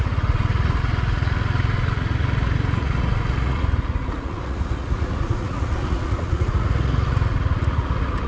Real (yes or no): no